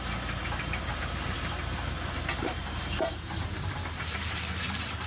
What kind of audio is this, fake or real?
fake